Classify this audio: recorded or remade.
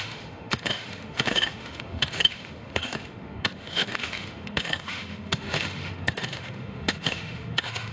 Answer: remade